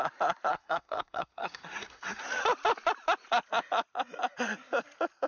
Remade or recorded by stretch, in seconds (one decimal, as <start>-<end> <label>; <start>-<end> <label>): 0.0-0.5 recorded; 0.5-2.2 remade; 2.2-5.3 recorded